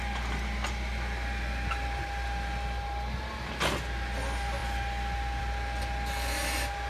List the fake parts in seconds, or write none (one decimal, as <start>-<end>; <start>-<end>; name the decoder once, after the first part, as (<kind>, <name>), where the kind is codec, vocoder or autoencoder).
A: none